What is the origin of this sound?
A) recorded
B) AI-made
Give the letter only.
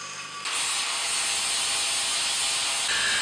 A